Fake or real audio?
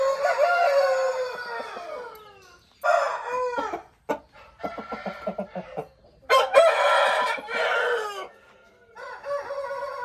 real